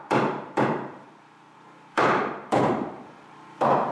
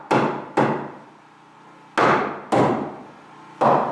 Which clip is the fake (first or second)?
first